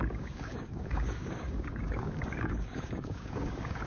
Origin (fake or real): fake